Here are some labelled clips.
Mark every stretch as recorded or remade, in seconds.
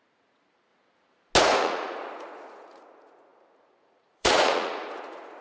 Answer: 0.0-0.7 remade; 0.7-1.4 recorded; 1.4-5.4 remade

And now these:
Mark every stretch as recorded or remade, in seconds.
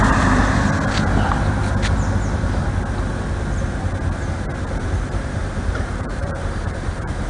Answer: 0.0-0.4 remade; 0.4-4.8 recorded; 4.8-7.3 remade